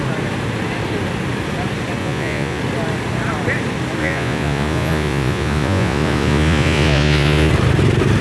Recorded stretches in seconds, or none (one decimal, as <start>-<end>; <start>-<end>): 0.0-2.0; 2.6-4.0; 7.5-8.2